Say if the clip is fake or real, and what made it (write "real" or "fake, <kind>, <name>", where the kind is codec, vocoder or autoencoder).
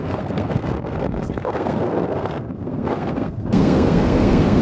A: fake, codec, SNAC